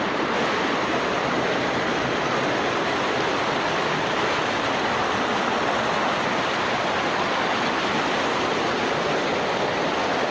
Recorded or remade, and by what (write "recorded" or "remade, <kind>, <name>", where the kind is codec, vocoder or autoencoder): recorded